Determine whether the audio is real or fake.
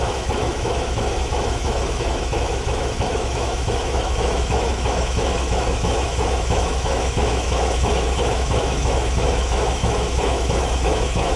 fake